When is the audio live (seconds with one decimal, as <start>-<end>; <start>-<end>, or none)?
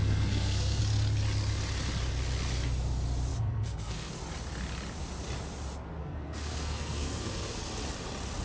0.8-3.3; 4.1-6.0; 7.6-8.4